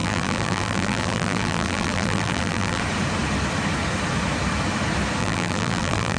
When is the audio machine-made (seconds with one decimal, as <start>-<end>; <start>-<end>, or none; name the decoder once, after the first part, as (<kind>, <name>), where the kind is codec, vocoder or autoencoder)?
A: 0.0-2.8 (vocoder, BigVGAN v2); 5.2-6.2